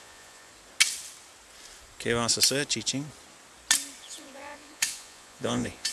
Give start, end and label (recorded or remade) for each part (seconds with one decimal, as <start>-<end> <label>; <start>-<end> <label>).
0.0-0.5 remade; 0.5-4.0 recorded; 4.0-5.9 remade